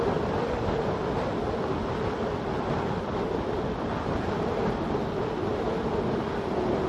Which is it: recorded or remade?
recorded